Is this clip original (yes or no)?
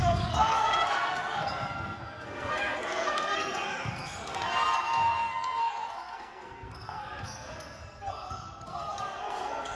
no